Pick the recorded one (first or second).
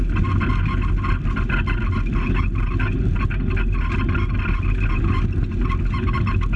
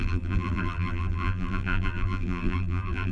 first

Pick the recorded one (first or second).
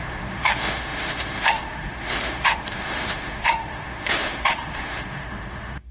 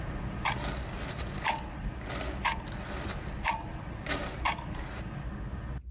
second